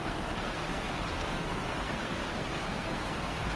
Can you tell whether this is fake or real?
fake